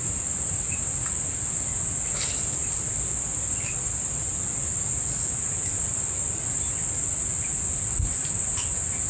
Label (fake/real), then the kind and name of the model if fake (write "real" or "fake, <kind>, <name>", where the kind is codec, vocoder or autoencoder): real